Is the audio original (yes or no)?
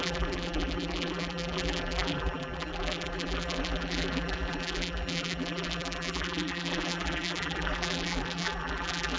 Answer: no